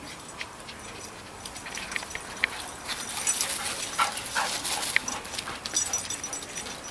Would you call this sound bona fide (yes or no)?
yes